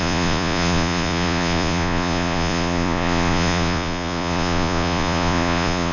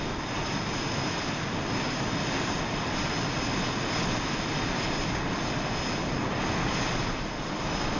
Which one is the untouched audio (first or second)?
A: second